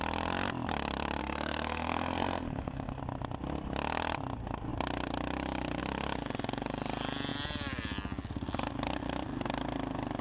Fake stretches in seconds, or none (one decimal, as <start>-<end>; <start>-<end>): 1.2-3.0